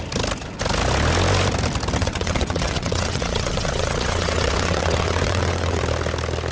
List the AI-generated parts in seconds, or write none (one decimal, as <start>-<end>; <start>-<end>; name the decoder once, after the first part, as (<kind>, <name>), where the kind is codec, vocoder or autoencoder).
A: 2.0-5.8 (vocoder, WaveNeXt)